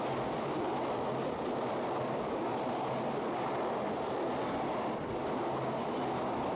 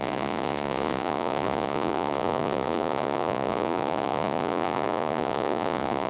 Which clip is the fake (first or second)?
second